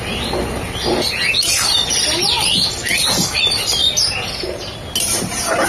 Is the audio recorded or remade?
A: recorded